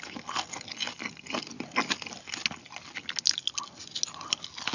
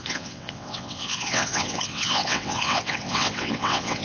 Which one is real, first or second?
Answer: first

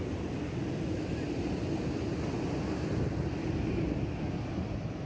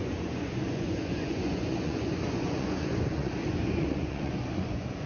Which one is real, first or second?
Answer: first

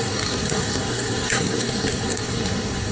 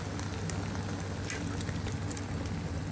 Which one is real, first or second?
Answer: second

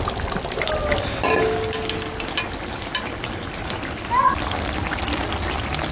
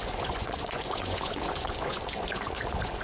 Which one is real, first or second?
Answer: first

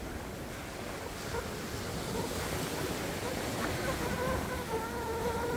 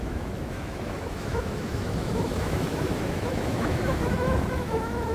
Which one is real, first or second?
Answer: first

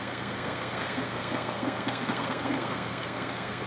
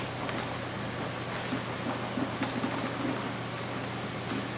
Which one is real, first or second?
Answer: second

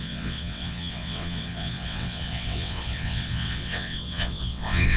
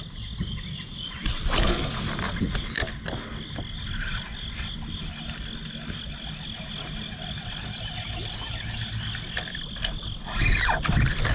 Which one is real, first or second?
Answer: second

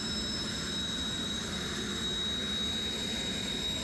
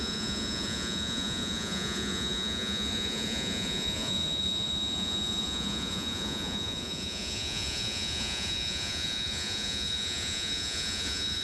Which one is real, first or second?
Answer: first